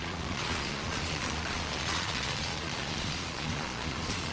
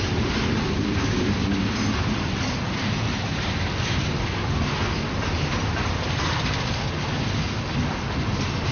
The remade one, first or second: first